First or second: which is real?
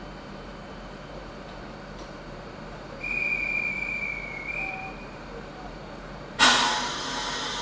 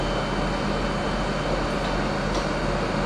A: second